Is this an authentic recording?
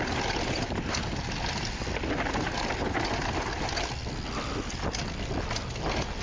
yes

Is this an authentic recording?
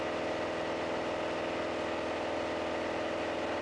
yes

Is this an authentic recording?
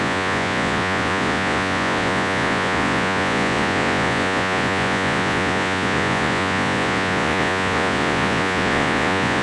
no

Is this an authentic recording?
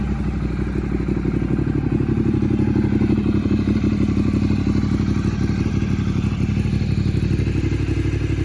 yes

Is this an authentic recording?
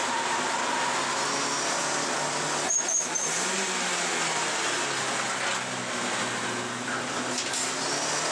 yes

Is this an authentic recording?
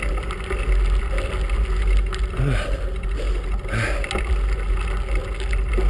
yes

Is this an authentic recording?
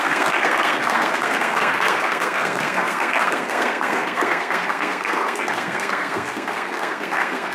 no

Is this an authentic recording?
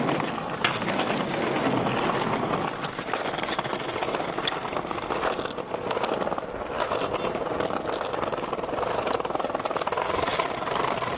yes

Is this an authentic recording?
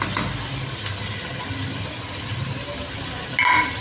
yes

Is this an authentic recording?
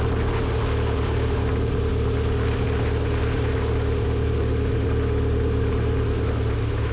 yes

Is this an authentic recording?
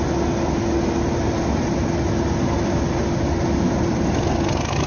yes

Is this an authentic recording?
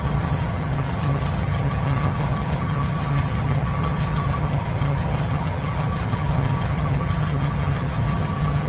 no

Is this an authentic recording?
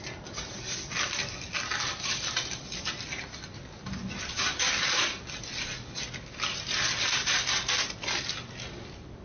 yes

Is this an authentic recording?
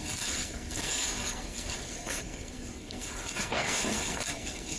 no